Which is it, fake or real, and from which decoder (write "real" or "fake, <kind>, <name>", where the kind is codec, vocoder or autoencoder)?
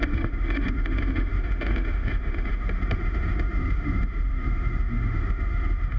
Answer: fake, autoencoder, DAC-VAE